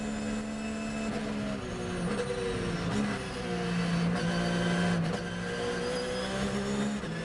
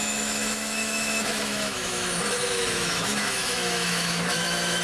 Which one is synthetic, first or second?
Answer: second